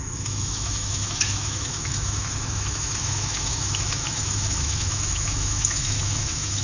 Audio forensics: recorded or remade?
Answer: remade